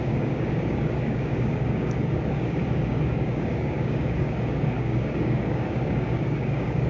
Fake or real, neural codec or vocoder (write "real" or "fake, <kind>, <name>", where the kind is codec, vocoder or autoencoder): fake, codec, DAC